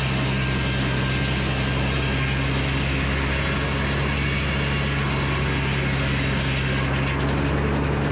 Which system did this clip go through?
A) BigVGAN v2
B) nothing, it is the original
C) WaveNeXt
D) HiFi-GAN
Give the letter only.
B